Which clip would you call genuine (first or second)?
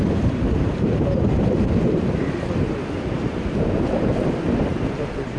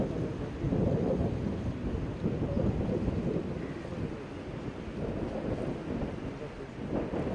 second